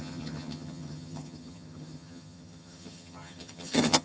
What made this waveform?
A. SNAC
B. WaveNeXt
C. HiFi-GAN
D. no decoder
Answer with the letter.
C